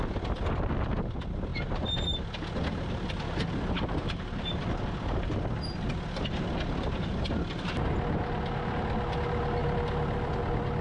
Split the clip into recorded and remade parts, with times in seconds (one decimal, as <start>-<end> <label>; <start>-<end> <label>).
0.0-10.8 recorded